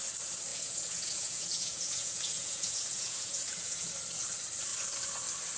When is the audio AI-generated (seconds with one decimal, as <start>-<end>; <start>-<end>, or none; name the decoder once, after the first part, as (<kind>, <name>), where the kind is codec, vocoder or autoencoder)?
0.5-3.9 (vocoder, Vocos)